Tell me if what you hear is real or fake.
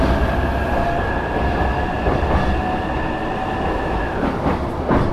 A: real